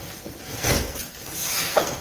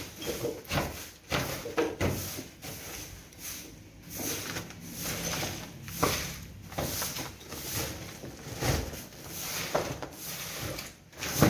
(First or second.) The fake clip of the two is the first